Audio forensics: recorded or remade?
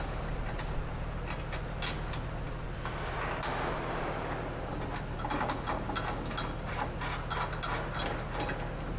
recorded